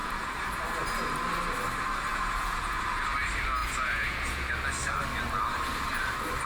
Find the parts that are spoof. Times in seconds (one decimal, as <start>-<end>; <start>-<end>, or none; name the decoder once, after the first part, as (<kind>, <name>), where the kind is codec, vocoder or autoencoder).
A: 0.0-0.6 (vocoder, Vocos); 2.1-3.0; 3.6-4.5

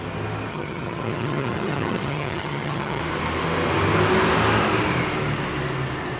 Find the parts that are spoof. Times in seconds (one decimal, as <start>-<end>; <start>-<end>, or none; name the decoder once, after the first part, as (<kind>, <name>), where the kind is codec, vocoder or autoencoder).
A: 0.5-3.0 (vocoder, HiFi-GAN)

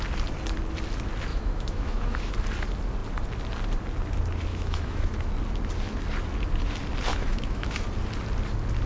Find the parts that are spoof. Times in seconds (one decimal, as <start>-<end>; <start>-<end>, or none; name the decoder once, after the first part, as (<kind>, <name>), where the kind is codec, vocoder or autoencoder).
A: 1.3-2.3 (autoencoder, DAC-VAE); 4.5-5.3; 7.1-7.7

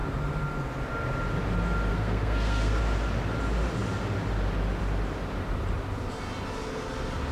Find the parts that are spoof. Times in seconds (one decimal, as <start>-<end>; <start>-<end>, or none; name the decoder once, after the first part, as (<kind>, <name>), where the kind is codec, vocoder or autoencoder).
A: 1.9-2.8 (codec, SNAC)